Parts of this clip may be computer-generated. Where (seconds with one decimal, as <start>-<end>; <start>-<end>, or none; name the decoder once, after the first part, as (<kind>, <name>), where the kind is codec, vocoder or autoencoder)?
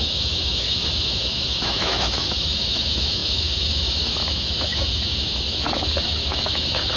0.0-7.0 (autoencoder, DAC-VAE)